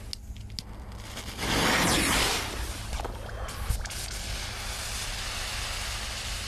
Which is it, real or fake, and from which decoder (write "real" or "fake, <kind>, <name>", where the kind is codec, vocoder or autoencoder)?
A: real